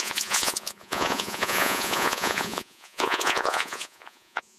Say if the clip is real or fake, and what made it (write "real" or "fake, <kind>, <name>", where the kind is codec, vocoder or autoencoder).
fake, vocoder, Vocos